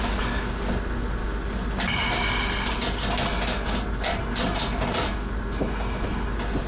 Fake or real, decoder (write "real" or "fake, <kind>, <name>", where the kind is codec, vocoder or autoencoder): real